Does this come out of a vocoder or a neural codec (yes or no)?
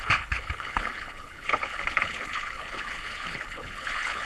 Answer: yes